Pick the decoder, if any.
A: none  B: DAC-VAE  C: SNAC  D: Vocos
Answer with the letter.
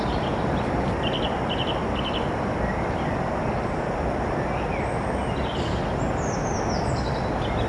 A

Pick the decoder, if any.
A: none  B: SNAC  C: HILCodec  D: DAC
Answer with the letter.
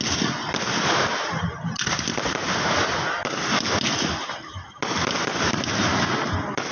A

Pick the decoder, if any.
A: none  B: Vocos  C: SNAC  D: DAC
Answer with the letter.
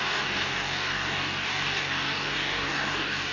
D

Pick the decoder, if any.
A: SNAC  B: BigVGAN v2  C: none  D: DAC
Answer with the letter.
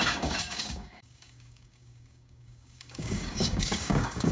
D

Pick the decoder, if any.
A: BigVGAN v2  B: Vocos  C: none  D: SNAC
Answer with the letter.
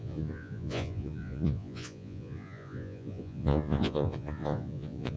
B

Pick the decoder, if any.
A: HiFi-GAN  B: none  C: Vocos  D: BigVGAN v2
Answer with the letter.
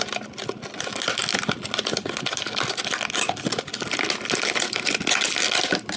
B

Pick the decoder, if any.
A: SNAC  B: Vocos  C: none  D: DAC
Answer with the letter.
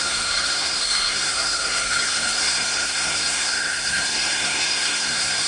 A